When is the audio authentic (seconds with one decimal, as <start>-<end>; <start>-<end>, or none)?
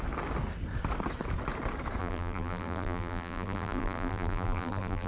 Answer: 0.0-2.0